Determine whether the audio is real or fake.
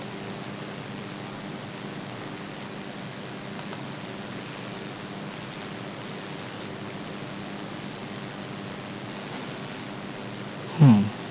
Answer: real